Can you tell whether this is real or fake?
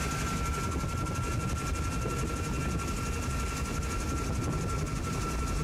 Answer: real